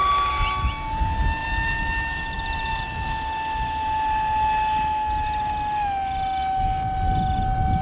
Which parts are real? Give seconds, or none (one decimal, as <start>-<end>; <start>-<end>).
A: 0.0-7.8